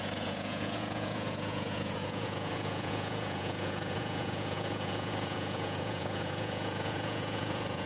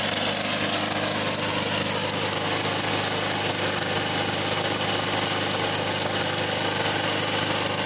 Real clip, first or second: second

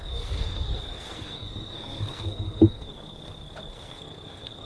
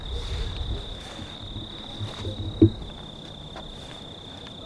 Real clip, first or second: second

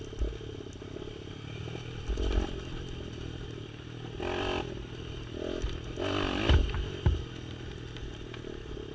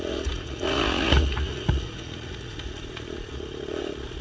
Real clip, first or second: first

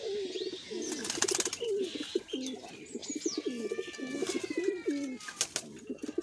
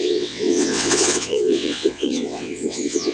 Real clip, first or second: first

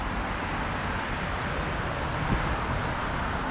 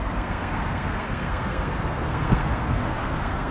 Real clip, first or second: first